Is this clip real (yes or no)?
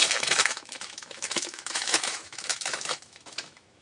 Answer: no